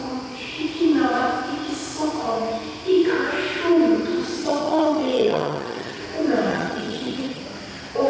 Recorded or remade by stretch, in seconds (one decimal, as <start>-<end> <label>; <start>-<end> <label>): 0.0-4.4 recorded; 4.4-6.0 remade; 6.0-6.5 recorded; 6.5-7.4 remade; 7.4-8.1 recorded